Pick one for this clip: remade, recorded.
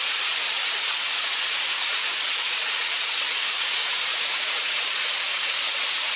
remade